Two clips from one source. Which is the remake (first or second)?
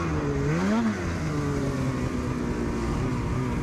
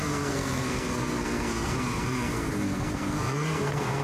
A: second